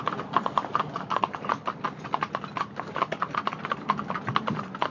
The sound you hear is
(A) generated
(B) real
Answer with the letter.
B